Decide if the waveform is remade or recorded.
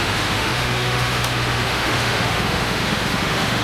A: remade